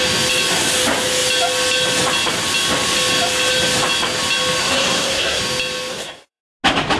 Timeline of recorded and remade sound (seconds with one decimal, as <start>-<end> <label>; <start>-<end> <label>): 0.0-4.6 recorded; 4.6-5.4 remade; 5.4-5.9 recorded; 5.9-6.4 remade; 6.4-7.0 recorded